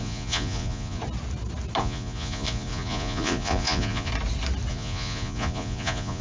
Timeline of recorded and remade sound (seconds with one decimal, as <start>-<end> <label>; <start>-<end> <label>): 0.0-1.0 remade; 1.0-1.8 recorded; 1.8-4.1 remade; 4.1-4.7 recorded; 4.7-6.2 remade

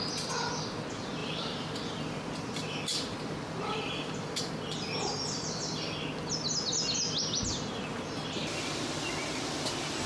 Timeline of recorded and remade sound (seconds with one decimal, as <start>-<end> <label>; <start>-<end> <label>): 0.0-1.2 recorded; 1.2-6.3 remade; 6.3-7.9 recorded; 7.9-8.8 remade; 8.8-10.1 recorded

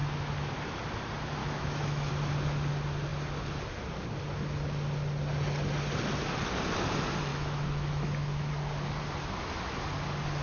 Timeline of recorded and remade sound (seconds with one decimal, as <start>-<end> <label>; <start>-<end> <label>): 0.0-1.4 recorded; 1.4-2.1 remade; 2.1-7.3 recorded; 7.3-8.5 remade; 8.5-10.4 recorded

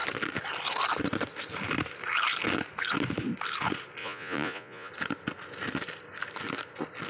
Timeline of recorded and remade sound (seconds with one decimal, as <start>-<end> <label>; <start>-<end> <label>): 0.0-4.0 recorded; 4.0-4.9 remade; 4.9-7.1 recorded

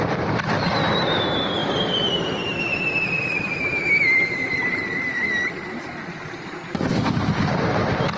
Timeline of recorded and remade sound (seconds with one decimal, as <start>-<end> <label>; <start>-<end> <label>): 0.0-1.6 recorded; 1.6-2.1 remade; 2.1-2.7 recorded; 2.7-3.9 remade; 3.9-4.5 recorded; 4.5-8.2 remade

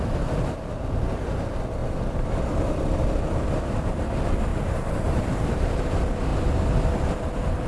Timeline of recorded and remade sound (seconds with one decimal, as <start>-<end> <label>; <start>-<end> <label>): 0.0-1.8 recorded; 1.8-2.4 remade; 2.4-4.5 recorded; 4.5-5.7 remade; 5.7-7.7 recorded

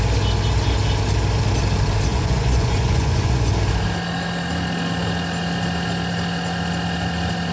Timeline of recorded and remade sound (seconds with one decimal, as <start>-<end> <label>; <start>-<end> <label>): 0.0-2.1 recorded; 2.1-3.5 remade; 3.5-7.5 recorded

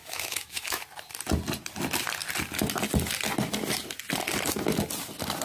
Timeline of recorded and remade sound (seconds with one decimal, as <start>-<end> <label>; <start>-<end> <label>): 0.0-0.8 remade; 0.8-5.4 recorded